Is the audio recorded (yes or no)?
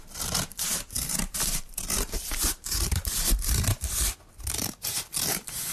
no